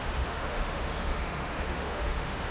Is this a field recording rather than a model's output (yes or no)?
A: no